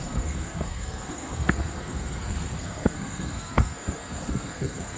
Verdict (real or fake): fake